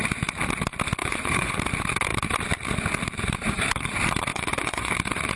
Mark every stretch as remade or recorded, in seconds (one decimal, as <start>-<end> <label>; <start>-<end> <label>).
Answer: 0.0-1.0 recorded; 1.0-1.5 remade; 1.5-4.3 recorded; 4.3-4.9 remade; 4.9-5.4 recorded